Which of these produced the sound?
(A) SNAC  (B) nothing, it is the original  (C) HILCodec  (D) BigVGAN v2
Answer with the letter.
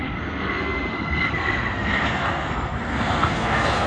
A